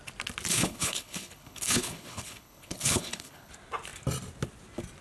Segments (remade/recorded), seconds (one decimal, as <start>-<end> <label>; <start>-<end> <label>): 0.0-0.5 recorded; 0.5-3.5 remade; 3.5-5.0 recorded